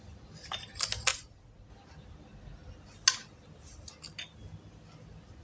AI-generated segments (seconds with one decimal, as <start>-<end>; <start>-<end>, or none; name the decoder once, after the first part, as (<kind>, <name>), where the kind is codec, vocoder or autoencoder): 1.1-1.7 (vocoder, Vocos)